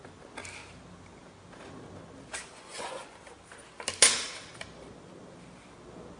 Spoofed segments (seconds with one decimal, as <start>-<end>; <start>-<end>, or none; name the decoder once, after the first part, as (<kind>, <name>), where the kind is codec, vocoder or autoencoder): 2.5-3.2 (vocoder, Vocos)